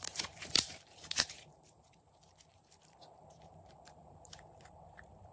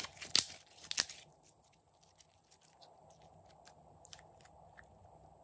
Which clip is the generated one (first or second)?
first